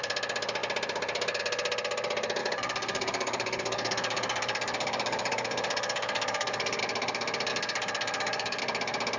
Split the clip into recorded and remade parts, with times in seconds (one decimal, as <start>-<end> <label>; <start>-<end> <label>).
0.0-2.4 recorded; 2.4-6.8 remade; 6.8-7.5 recorded; 7.5-8.6 remade; 8.6-9.2 recorded